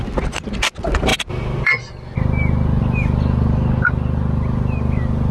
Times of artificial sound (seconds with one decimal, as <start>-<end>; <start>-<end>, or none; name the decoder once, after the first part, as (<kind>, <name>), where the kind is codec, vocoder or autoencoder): none